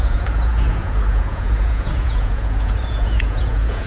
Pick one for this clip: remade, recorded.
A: remade